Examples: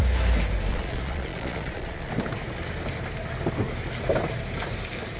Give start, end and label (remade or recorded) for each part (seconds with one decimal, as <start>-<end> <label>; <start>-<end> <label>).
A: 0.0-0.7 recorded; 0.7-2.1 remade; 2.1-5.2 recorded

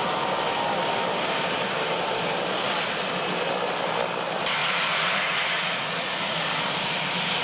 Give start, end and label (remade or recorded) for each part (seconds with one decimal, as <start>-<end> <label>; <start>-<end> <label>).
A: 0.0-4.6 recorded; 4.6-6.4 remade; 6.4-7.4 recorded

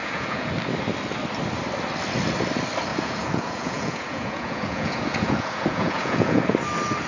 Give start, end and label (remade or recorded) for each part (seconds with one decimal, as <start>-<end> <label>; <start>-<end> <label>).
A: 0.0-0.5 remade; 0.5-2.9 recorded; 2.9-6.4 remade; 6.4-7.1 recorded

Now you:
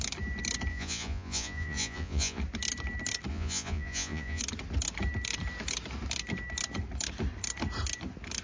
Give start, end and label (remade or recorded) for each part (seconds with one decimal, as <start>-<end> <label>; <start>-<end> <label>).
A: 0.0-0.7 recorded; 0.7-2.4 remade; 2.4-3.3 recorded; 3.3-4.4 remade; 4.4-8.4 recorded

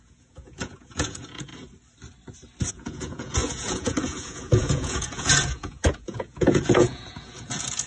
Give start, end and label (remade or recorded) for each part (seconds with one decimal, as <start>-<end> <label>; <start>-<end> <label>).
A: 0.0-1.5 remade; 1.5-2.7 recorded; 2.7-7.9 remade